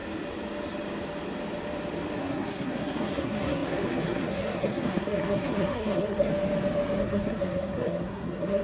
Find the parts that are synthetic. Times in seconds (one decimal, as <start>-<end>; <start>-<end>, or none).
2.2-6.3; 7.0-8.6